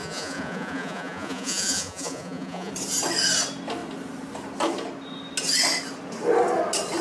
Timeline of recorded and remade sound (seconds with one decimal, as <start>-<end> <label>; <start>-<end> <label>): 0.0-2.7 remade; 2.7-7.0 recorded